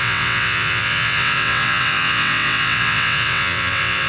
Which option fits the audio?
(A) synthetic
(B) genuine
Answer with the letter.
A